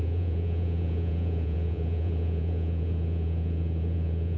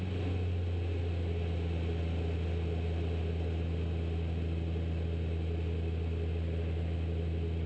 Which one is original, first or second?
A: second